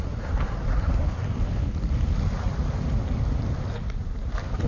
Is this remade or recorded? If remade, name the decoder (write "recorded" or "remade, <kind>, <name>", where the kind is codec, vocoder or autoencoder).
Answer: recorded